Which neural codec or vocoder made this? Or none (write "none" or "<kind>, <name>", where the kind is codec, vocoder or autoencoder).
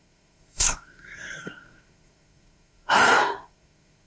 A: codec, SNAC